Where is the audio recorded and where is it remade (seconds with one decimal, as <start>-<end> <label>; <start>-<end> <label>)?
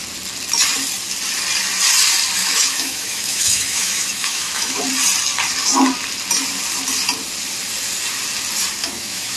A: 0.0-2.4 recorded; 2.4-4.8 remade; 4.8-8.8 recorded; 8.8-9.4 remade